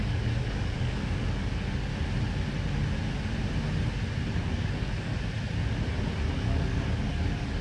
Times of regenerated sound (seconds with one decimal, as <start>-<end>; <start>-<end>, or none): 0.0-1.9; 4.3-5.1; 6.3-7.6

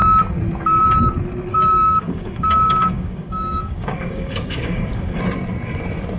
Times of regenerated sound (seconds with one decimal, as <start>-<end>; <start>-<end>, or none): 1.5-5.2

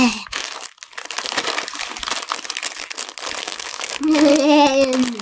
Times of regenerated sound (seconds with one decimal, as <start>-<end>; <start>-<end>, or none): 0.0-0.4; 3.4-4.3

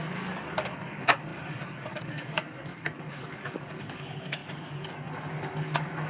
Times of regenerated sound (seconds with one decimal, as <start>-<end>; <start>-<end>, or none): 0.0-6.1

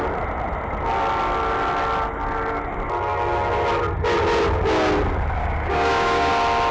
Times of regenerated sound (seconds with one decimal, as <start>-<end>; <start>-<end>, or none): 5.4-6.3

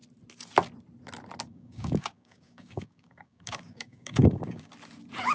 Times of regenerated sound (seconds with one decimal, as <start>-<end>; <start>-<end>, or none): 1.5-4.7